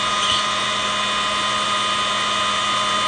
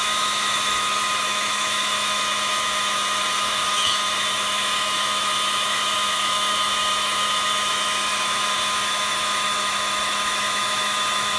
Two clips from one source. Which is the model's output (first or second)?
second